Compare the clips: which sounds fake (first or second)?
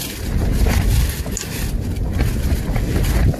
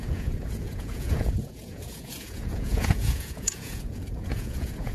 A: second